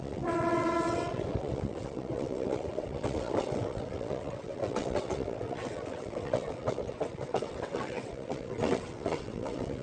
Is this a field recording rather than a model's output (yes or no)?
no